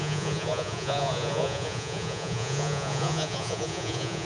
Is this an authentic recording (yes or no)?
no